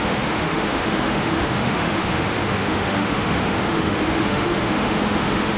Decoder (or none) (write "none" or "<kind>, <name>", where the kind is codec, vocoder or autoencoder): autoencoder, DAC-VAE